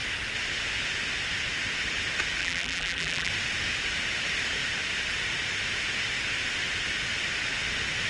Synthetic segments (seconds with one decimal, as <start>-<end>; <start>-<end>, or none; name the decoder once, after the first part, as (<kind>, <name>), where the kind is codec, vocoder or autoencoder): 2.4-3.3 (vocoder, BigVGAN v2)

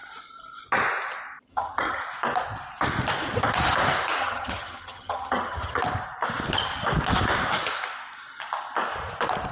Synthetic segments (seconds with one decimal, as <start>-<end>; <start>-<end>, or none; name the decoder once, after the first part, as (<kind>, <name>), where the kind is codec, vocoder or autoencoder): 1.5-2.0 (vocoder, HiFi-GAN); 4.2-5.8

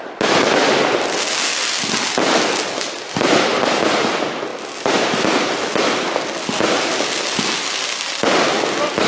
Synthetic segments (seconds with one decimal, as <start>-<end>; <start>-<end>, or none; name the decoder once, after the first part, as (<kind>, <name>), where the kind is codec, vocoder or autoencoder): none

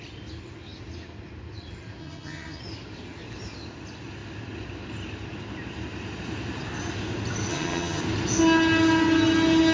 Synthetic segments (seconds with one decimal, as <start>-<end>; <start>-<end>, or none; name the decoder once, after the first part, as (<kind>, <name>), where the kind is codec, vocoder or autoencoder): 2.0-2.6 (vocoder, HiFi-GAN); 7.5-8.0

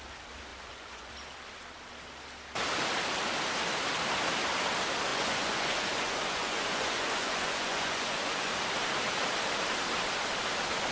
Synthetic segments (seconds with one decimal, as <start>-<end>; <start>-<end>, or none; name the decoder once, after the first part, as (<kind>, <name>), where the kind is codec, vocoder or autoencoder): 0.5-1.1 (vocoder, Vocos); 5.1-8.5

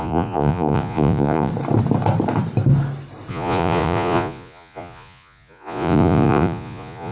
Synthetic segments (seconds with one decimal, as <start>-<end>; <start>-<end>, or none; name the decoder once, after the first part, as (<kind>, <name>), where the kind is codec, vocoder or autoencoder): 0.0-1.5 (vocoder, Vocos); 3.3-7.1

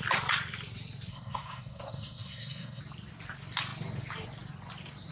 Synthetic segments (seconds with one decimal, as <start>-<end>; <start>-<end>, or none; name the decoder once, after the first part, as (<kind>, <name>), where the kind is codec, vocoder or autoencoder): 1.1-2.8 (codec, SNAC)